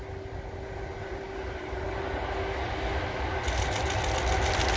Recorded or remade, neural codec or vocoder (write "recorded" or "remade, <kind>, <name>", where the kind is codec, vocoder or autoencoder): recorded